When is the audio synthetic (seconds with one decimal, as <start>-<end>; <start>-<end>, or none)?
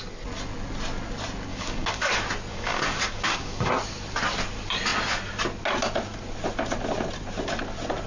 1.5-2.1; 2.5-3.7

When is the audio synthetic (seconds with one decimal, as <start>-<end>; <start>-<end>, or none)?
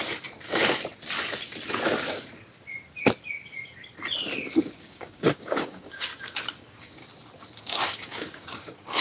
4.8-6.1; 6.6-7.0; 7.6-9.0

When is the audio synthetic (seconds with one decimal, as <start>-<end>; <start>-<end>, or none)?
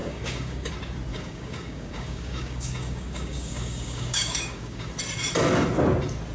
0.0-0.7; 1.1-4.9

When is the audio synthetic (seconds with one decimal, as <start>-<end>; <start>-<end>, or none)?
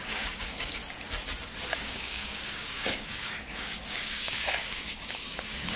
0.0-0.8; 1.8-5.8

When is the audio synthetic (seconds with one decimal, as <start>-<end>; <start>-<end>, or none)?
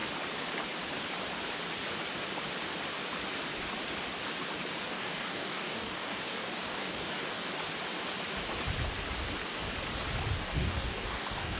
4.8-7.4; 10.3-11.6